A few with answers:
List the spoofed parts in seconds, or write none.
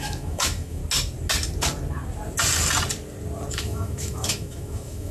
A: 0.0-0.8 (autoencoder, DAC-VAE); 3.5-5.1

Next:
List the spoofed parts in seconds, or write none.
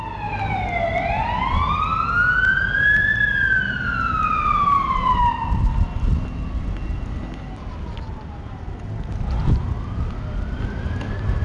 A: none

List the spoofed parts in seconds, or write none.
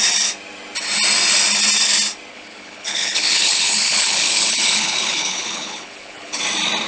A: 2.3-6.4 (codec, HILCodec)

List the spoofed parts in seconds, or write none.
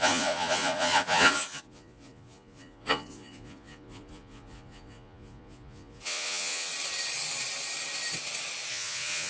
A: 0.0-6.7 (vocoder, Vocos); 8.7-9.3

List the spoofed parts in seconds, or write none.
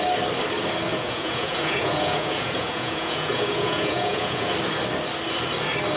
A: 0.9-4.5 (vocoder, Vocos)